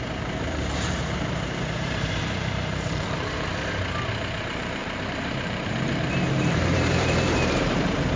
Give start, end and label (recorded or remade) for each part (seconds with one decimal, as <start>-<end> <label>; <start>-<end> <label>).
0.0-3.5 remade; 3.5-4.1 recorded; 4.1-8.2 remade